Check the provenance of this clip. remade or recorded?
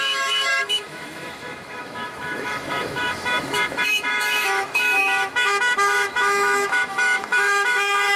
remade